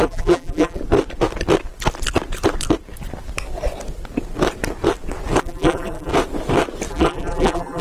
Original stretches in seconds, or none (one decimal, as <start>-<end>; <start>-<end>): 0.8-5.4; 6.1-6.9